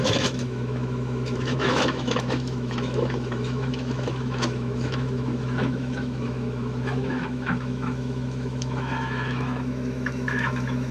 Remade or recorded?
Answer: remade